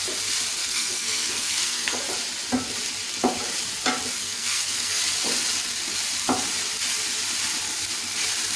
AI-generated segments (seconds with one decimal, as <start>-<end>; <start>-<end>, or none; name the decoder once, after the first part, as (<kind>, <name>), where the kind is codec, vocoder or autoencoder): 0.6-2.0 (codec, SNAC); 4.2-5.0

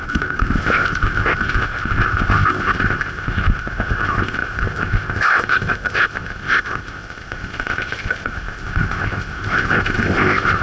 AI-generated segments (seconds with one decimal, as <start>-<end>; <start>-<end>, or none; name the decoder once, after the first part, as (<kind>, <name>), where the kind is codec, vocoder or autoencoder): 0.0-10.6 (codec, ZipCodec)

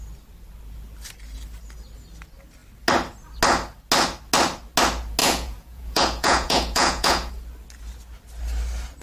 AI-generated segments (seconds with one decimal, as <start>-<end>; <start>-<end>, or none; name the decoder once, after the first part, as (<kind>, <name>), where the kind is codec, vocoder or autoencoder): 5.2-7.3 (vocoder, Vocos)

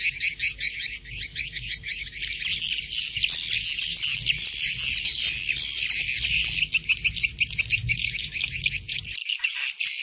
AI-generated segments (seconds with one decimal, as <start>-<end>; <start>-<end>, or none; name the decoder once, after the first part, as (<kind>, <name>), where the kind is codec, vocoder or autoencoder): 1.4-2.0 (autoencoder, DAC-VAE); 7.8-8.4

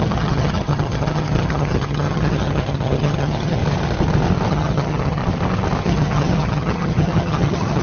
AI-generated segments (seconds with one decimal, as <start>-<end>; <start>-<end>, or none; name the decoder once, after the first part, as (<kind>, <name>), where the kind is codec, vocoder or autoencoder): 0.0-3.6 (vocoder, HiFi-GAN); 4.5-5.2; 5.8-7.8

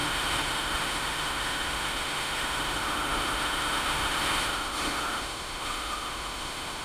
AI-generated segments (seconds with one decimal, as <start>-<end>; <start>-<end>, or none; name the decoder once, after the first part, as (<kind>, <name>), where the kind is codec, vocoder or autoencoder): 0.0-6.8 (autoencoder, DAC-VAE)